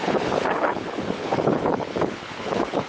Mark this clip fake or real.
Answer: fake